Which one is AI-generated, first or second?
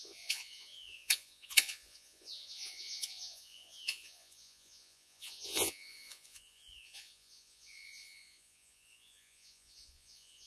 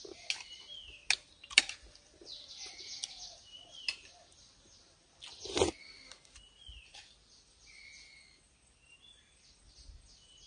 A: first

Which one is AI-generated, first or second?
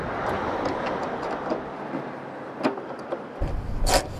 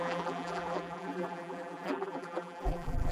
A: second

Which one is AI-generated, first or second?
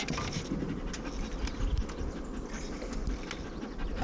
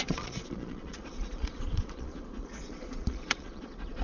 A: second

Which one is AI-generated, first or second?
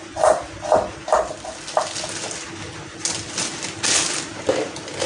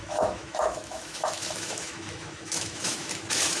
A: second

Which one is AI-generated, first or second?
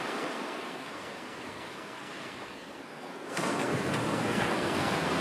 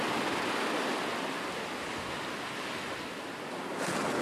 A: first